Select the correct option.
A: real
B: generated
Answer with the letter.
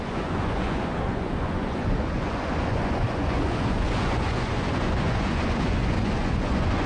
B